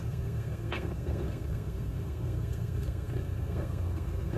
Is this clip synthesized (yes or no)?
yes